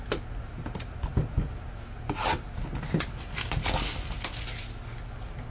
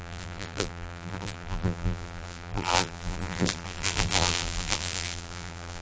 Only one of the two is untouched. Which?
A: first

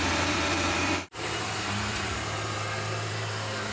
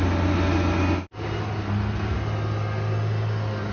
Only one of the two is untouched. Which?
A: second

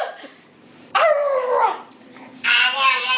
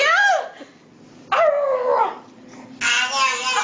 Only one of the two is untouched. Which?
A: second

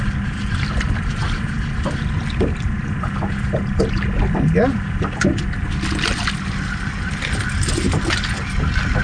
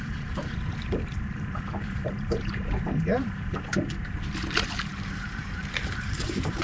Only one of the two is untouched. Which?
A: first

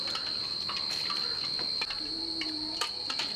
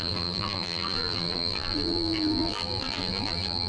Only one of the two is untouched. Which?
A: first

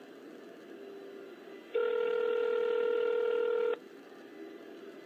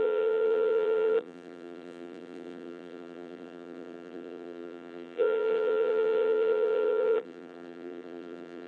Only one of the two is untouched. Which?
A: first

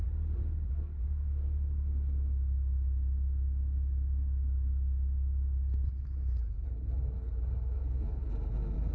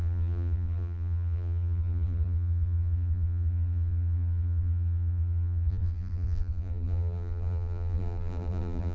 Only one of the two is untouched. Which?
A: first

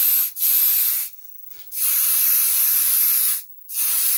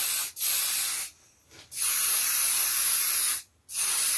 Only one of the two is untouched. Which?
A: second